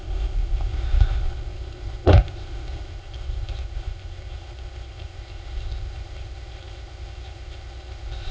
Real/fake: fake